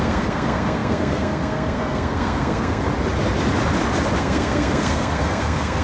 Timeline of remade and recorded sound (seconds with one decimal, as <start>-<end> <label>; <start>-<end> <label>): 0.0-2.9 remade; 2.9-4.2 recorded; 4.2-5.8 remade